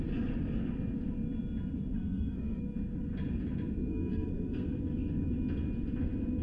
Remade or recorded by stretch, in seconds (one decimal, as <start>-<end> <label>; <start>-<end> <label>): 0.0-1.9 recorded; 1.9-2.6 remade; 2.6-3.9 recorded; 3.9-4.8 remade; 4.8-6.4 recorded